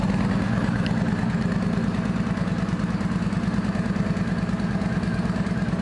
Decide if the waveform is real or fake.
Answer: real